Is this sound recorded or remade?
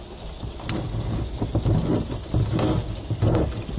recorded